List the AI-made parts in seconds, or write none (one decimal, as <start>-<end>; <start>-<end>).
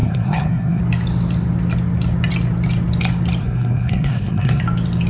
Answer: 0.0-0.8; 3.4-4.6